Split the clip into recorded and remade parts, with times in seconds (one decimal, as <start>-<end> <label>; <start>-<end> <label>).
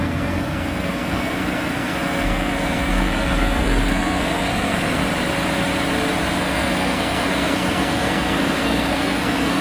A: 0.0-5.0 remade; 5.0-6.4 recorded; 6.4-9.6 remade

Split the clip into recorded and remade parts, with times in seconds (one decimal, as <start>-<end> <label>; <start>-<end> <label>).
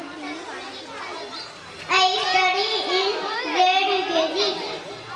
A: 0.0-5.2 recorded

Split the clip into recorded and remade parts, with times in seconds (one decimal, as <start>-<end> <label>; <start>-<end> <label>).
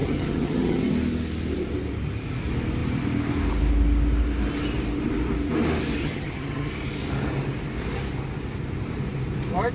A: 0.0-0.8 remade; 0.8-6.0 recorded; 6.0-6.7 remade; 6.7-9.7 recorded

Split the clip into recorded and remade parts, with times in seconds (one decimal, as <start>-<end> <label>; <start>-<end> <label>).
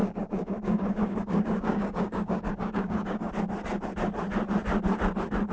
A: 0.0-3.3 remade; 3.3-5.5 recorded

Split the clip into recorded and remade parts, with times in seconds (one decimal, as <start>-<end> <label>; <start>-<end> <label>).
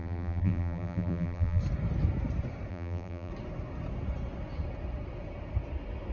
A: 0.0-1.6 remade; 1.6-2.7 recorded; 2.7-3.3 remade; 3.3-6.1 recorded